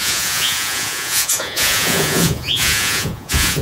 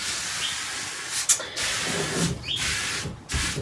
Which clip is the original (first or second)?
second